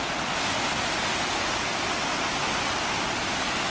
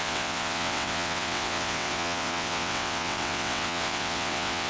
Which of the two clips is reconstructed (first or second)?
second